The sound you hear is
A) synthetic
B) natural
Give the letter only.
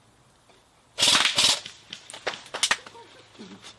B